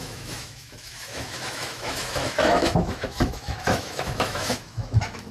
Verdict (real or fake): fake